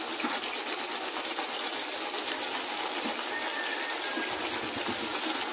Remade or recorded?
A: recorded